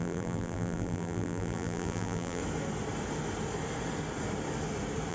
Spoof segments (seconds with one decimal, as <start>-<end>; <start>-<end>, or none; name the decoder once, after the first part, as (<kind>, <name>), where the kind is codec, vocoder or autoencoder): 0.0-2.4 (vocoder, BigVGAN v2)